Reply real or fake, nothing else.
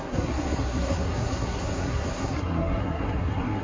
fake